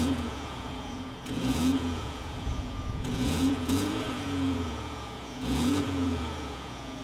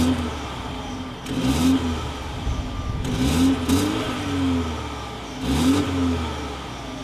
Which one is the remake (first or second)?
first